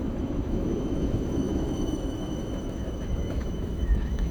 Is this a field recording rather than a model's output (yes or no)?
no